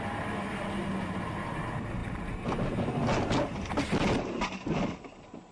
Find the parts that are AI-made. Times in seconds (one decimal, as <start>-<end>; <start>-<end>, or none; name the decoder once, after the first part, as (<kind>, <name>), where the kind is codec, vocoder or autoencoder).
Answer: none